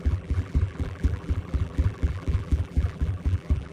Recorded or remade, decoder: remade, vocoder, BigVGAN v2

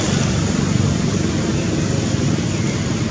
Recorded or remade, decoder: recorded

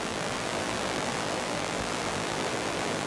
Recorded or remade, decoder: remade, vocoder, BigVGAN v2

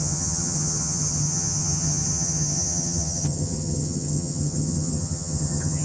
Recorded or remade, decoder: remade, vocoder, HiFi-GAN